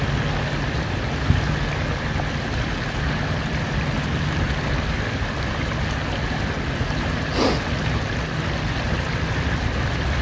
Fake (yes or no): no